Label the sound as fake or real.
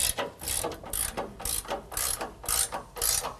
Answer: real